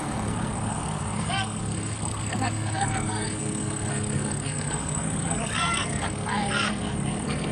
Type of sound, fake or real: fake